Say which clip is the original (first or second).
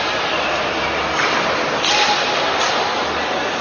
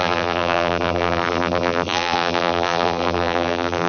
first